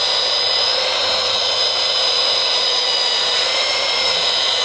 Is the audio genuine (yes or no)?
no